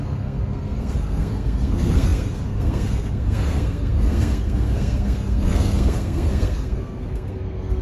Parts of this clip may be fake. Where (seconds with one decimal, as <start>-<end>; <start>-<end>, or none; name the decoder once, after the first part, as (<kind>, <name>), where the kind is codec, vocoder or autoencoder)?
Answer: 0.0-7.8 (codec, SNAC)